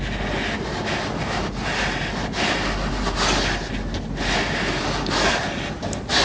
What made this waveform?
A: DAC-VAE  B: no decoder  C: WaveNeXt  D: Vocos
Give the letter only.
B